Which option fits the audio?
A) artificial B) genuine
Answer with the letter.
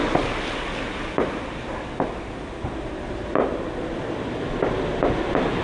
B